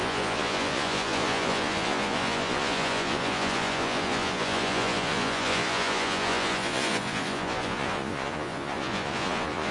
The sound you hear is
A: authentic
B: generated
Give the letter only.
B